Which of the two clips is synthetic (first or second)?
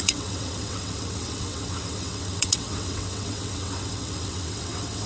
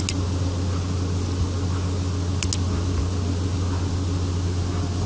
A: first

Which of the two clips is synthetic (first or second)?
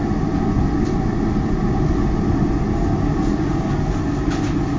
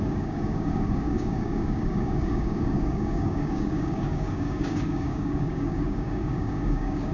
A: second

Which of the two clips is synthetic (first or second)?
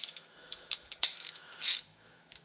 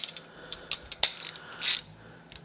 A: first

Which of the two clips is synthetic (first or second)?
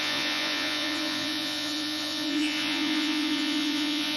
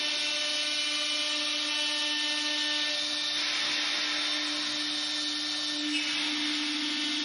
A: first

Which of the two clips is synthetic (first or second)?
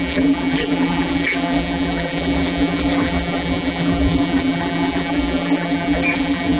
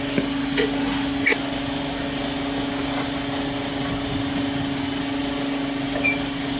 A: first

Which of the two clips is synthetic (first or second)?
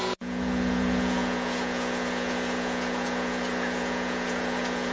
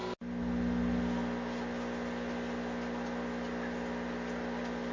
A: first